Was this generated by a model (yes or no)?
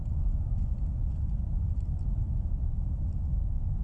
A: no